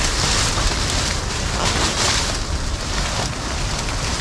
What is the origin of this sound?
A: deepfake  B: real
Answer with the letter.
B